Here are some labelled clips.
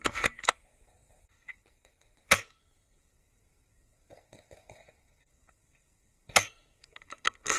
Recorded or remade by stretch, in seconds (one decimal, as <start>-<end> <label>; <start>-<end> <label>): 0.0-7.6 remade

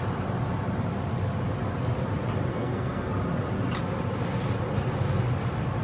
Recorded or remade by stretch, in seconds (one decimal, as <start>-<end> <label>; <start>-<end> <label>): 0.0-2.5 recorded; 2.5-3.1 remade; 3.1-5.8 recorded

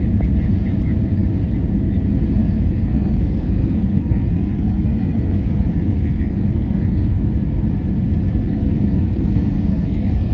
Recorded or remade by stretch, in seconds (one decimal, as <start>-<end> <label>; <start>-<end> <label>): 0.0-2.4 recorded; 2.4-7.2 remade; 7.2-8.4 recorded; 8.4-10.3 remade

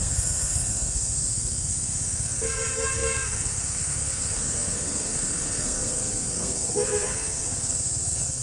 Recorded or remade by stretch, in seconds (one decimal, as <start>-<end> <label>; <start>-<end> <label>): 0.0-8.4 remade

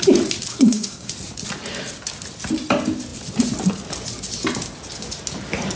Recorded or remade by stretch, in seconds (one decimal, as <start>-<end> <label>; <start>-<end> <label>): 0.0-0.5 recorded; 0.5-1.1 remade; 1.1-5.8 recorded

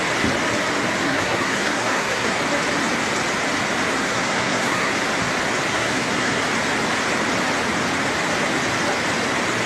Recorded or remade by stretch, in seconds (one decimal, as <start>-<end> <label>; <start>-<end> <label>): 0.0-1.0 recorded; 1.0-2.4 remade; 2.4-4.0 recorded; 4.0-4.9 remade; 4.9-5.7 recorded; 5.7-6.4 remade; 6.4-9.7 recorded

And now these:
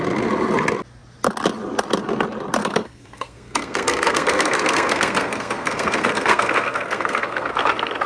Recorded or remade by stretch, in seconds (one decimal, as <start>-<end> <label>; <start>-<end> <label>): 0.0-2.6 recorded; 2.6-7.5 remade; 7.5-8.1 recorded